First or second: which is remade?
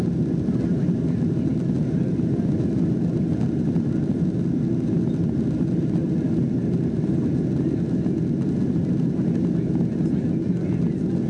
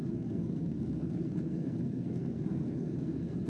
second